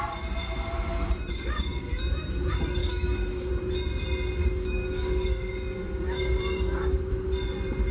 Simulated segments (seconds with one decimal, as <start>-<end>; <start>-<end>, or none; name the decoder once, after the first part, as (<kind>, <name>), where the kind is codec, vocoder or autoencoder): 1.3-1.9 (codec, DAC); 2.8-3.5; 4.4-7.1